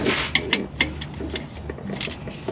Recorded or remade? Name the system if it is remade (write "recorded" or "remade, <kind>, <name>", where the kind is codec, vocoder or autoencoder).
recorded